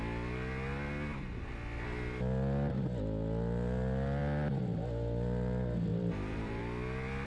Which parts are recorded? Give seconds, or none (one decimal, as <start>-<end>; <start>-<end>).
0.0-5.9; 6.6-7.3